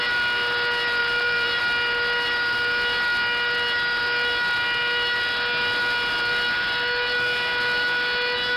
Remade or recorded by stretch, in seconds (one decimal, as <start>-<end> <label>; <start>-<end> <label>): 0.0-1.0 recorded; 1.0-1.6 remade; 1.6-8.6 recorded